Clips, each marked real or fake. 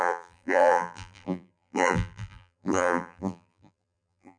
fake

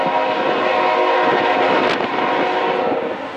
real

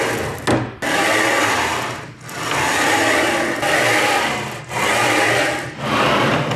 real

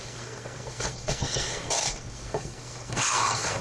fake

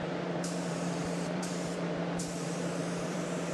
fake